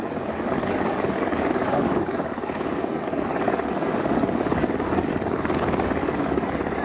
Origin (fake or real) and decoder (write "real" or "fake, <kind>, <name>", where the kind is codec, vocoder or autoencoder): fake, codec, DAC